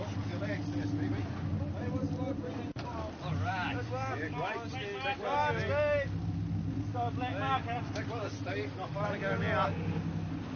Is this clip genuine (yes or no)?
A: yes